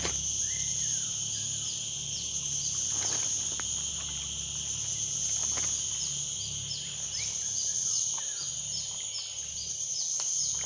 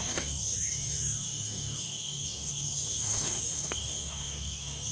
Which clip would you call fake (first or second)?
second